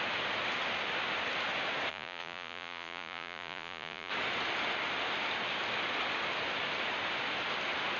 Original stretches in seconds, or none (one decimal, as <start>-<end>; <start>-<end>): 0.0-1.9; 4.1-8.0